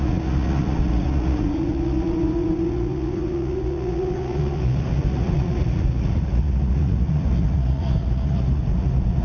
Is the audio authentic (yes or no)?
no